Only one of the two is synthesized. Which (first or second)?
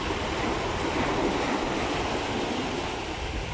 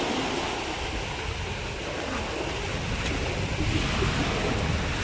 first